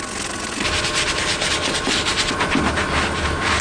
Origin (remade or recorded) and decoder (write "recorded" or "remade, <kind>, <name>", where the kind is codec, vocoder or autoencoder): recorded